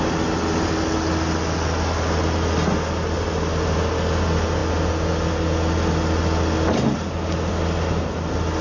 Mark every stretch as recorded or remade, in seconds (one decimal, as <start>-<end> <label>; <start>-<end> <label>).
0.0-8.6 recorded